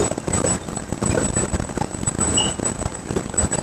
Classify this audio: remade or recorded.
remade